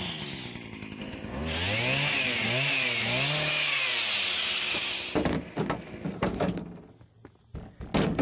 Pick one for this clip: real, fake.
real